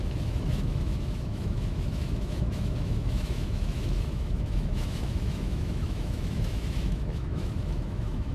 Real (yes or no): no